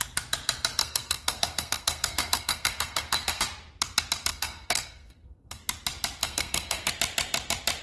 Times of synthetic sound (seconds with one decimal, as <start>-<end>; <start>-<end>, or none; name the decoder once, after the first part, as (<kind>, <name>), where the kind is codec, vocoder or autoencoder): 0.8-3.4 (codec, SNAC); 4.3-5.6; 6.2-6.9